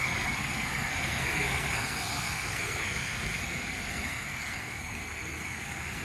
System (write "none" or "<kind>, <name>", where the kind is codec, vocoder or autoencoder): codec, SNAC